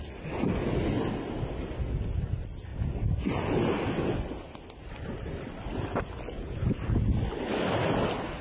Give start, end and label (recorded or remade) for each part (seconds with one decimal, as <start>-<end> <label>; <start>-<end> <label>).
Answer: 0.0-8.4 recorded